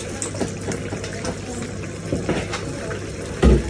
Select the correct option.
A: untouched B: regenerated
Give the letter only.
A